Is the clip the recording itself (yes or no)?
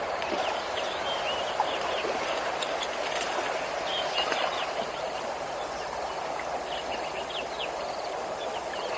yes